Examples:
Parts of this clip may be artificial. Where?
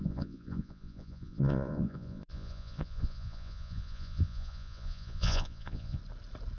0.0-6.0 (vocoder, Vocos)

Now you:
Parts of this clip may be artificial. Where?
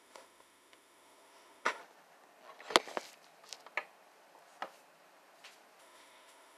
0.0-1.8 (autoencoder, DAC-VAE); 5.8-6.6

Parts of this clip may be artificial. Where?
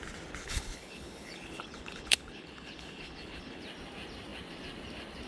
0.4-3.6 (codec, HILCodec)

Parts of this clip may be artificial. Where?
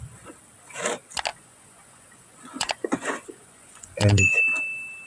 1.3-4.4 (vocoder, Vocos)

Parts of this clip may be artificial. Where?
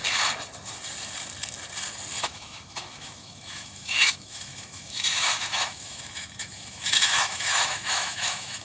2.2-8.6 (autoencoder, DAC-VAE)